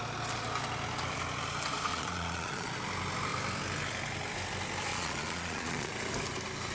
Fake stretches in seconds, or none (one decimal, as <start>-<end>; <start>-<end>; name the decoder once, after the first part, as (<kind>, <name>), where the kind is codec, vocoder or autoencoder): 1.9-2.7 (vocoder, Vocos); 4.9-5.9

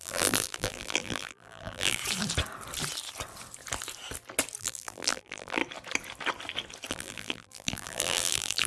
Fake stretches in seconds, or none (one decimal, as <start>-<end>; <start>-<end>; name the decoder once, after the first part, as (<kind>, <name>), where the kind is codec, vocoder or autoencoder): 0.0-2.0 (vocoder, BigVGAN v2); 4.6-5.6; 6.9-8.7

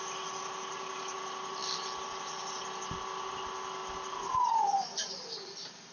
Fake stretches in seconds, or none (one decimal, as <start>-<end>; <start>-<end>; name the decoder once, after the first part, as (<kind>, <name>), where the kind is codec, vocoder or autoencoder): none

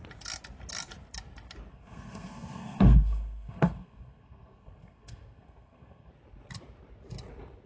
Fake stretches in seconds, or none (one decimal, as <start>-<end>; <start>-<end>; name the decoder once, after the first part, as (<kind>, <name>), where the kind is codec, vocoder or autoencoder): 1.7-6.1 (codec, SNAC)

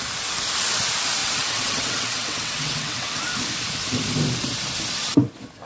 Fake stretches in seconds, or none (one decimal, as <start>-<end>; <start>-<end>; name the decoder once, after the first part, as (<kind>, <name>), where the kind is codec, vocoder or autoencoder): 1.2-3.2 (vocoder, WaveNeXt)